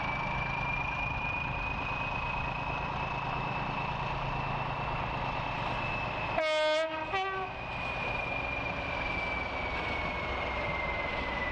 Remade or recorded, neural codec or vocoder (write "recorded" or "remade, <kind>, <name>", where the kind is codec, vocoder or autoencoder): recorded